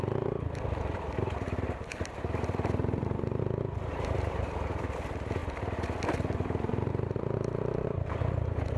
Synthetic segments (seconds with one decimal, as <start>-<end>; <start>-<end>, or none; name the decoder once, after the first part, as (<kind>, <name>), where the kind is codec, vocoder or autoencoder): 0.0-6.7 (vocoder, BigVGAN v2); 7.2-8.8